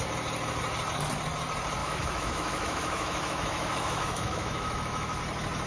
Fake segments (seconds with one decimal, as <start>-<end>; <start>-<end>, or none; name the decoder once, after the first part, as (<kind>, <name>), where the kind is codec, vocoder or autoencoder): 1.8-5.2 (autoencoder, DAC-VAE)